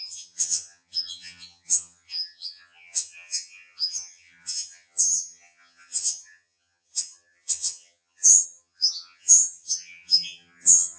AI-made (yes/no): yes